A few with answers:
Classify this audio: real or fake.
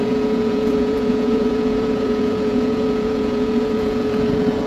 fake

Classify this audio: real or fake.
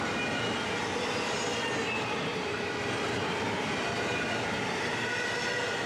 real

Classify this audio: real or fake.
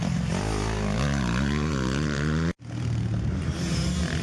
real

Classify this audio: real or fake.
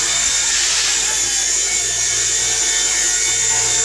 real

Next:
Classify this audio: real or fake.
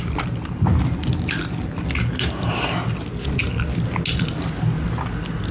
real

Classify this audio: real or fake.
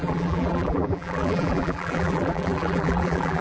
fake